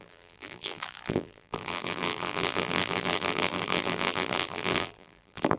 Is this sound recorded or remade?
remade